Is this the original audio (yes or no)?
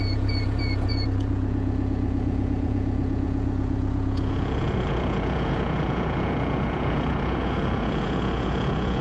no